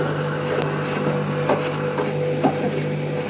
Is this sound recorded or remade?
recorded